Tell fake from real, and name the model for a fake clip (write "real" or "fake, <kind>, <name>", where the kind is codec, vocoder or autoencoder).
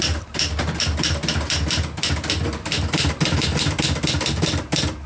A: real